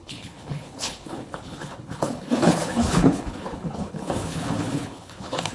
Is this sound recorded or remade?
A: remade